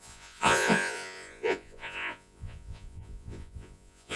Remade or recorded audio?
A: remade